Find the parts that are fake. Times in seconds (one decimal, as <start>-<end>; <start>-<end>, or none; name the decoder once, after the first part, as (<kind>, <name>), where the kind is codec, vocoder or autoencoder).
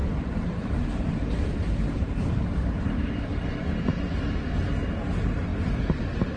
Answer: 0.0-3.7 (vocoder, BigVGAN v2); 5.5-6.0